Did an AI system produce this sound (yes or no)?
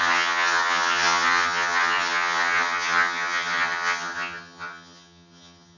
yes